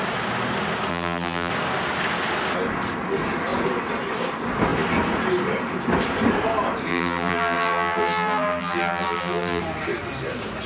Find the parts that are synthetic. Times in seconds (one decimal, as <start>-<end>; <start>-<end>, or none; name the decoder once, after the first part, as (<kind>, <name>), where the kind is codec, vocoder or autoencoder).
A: 0.9-1.5 (vocoder, BigVGAN v2); 6.9-9.6